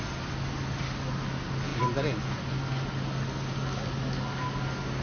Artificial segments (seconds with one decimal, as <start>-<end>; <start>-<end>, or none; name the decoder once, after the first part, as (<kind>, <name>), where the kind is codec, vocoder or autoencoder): none